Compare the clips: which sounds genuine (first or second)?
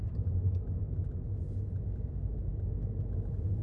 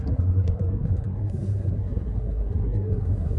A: first